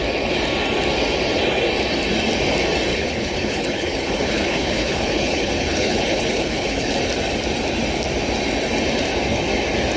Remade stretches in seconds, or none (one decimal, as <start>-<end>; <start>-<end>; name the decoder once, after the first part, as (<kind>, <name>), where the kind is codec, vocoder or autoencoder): 2.9-6.9 (codec, HILCodec)